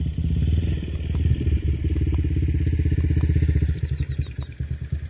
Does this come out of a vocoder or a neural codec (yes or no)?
no